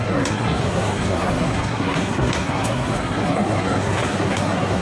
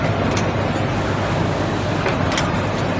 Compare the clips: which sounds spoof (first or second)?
first